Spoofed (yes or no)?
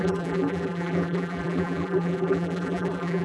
yes